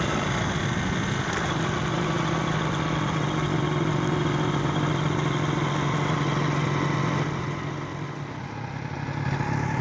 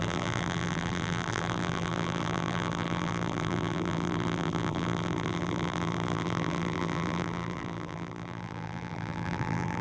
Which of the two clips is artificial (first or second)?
second